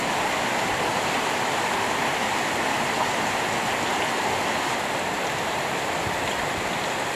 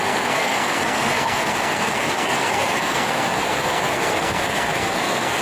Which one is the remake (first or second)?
second